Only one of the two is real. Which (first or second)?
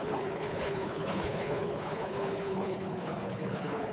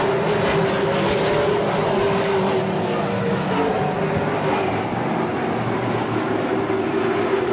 second